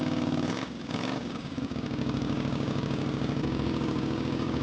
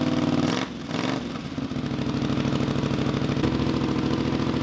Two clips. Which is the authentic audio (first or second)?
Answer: second